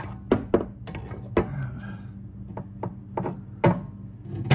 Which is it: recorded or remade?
recorded